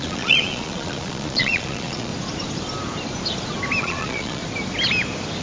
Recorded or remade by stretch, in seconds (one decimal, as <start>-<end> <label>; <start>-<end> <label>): 0.0-2.1 remade; 2.1-3.8 recorded; 3.8-4.4 remade; 4.4-5.4 recorded